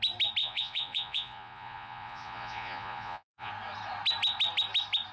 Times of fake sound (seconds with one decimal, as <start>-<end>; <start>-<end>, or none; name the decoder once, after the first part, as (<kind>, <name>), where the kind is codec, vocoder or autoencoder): 0.4-3.5 (vocoder, Vocos)